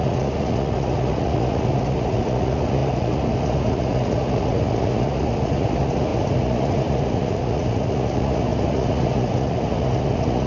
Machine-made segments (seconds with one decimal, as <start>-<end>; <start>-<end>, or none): 0.0-10.5